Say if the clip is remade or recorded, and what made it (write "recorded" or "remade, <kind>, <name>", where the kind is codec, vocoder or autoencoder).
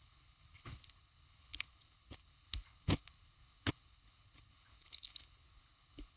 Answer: remade, codec, HILCodec